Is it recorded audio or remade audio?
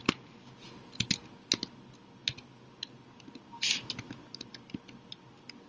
recorded